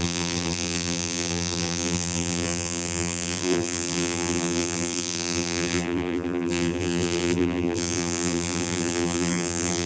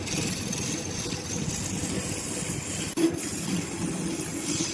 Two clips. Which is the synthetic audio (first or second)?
first